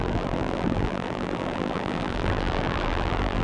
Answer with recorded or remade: remade